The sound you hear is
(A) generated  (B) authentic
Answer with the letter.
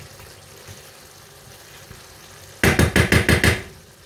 B